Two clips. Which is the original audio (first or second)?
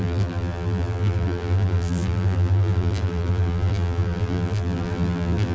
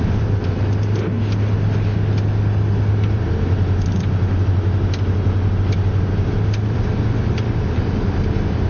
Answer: second